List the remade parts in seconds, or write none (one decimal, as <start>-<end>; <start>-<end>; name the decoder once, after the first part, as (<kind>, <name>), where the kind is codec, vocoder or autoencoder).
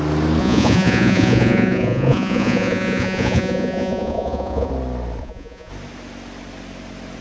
0.4-4.7 (vocoder, Vocos); 5.2-5.7